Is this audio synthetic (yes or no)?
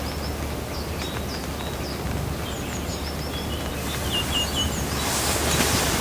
no